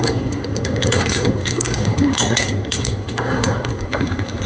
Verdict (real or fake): fake